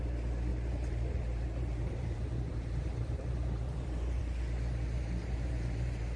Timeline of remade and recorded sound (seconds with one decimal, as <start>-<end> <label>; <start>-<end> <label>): 0.0-0.5 recorded; 0.5-4.2 remade; 4.2-5.2 recorded; 5.2-6.2 remade